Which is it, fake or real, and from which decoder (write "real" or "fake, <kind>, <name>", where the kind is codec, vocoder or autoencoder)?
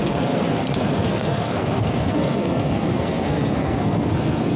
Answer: fake, codec, SNAC